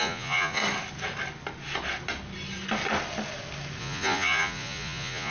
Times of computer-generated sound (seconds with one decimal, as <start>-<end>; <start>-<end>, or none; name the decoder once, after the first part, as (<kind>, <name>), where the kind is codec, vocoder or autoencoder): 0.0-0.6 (vocoder, Vocos); 3.8-5.3